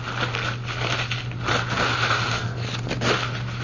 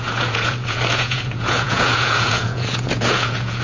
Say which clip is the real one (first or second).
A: first